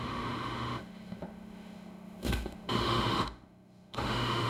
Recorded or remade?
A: remade